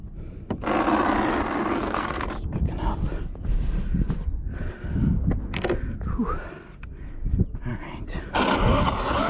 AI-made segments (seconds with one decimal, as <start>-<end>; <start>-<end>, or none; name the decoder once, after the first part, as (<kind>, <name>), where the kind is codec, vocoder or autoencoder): 1.7-2.3 (codec, SNAC)